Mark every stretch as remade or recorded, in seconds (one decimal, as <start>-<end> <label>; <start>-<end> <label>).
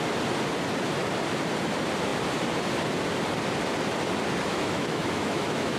0.0-4.5 recorded; 4.5-5.8 remade